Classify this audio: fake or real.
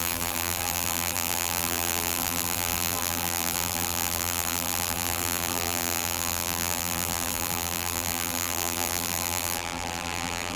fake